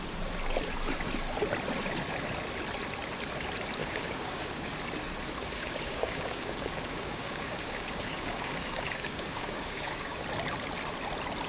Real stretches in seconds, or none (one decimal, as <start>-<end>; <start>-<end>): 0.0-3.8; 4.7-5.4; 10.2-11.5